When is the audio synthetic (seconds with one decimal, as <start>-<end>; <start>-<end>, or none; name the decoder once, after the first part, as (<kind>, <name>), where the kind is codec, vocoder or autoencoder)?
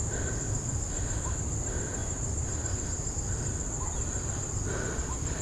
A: 2.0-3.1 (vocoder, BigVGAN v2)